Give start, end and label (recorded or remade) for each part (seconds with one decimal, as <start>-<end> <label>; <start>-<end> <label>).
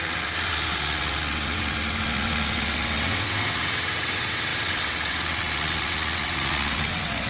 0.0-7.3 remade